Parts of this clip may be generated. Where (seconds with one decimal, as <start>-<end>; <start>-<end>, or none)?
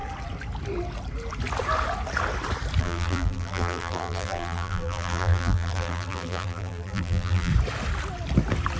2.8-7.5